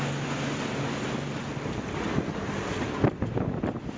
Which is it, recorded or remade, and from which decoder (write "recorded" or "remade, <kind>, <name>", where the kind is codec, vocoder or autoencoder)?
recorded